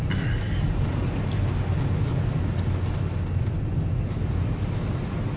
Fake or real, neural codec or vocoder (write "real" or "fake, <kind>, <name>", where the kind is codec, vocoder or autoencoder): real